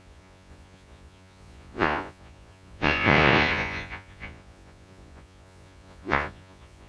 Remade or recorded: remade